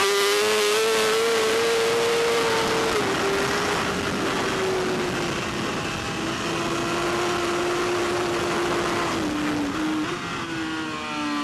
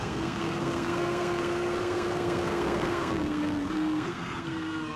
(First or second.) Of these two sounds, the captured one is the first